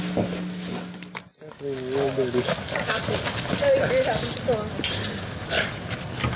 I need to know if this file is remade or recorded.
recorded